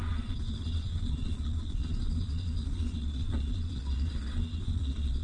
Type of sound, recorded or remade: remade